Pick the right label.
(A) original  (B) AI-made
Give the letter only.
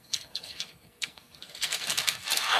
B